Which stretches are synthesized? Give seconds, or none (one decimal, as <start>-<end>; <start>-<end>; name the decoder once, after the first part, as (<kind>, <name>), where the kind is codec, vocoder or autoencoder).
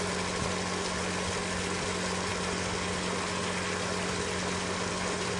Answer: none